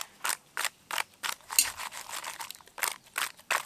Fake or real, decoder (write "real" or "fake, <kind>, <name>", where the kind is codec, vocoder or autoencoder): real